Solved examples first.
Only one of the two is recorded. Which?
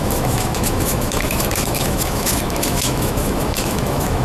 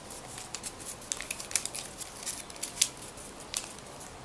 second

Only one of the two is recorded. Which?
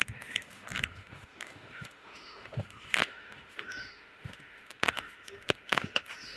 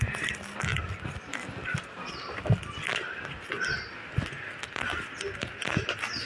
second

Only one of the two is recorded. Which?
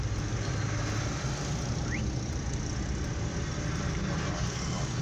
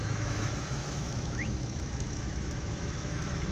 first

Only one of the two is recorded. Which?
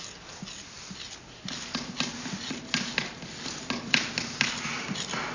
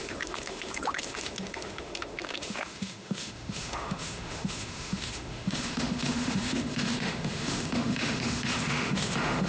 first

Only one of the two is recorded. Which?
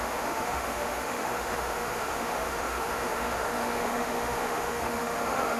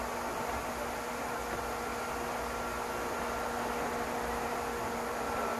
second